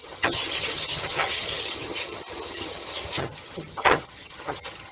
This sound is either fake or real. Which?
fake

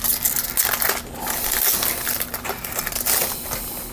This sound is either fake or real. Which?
real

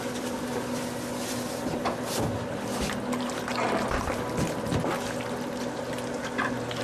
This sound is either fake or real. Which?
real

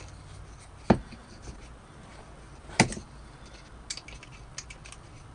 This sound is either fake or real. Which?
real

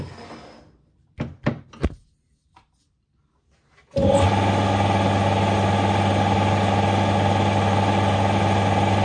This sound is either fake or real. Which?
real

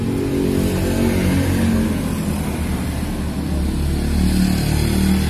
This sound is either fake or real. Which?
real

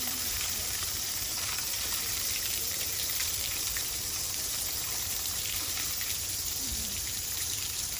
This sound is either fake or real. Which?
fake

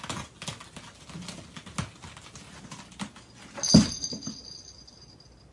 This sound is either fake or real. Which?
real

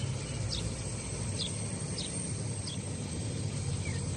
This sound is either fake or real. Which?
real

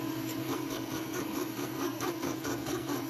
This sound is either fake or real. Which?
fake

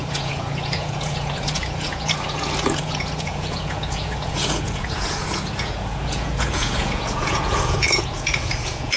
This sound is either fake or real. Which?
fake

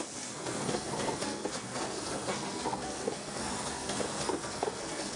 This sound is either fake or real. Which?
fake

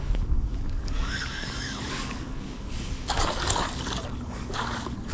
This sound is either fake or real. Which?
fake